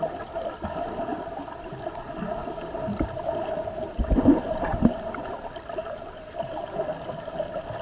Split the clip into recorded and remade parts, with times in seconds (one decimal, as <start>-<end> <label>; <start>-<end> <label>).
0.0-1.1 recorded; 1.1-1.8 remade; 1.8-7.8 recorded